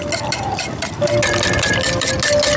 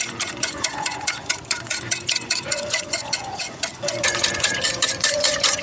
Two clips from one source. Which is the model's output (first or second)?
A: second